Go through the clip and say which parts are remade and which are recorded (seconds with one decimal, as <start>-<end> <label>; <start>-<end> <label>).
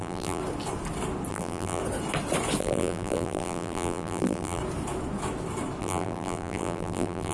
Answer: 0.0-0.4 remade; 0.4-1.3 recorded; 1.3-1.8 remade; 1.8-2.6 recorded; 2.6-4.6 remade; 4.6-5.8 recorded; 5.8-7.3 remade